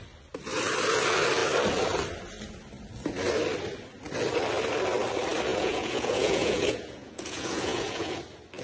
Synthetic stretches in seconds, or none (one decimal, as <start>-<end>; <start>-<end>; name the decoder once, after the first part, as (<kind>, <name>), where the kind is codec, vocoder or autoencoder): 5.5-8.2 (vocoder, Vocos)